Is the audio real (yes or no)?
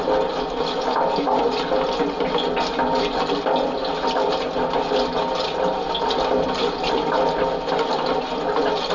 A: yes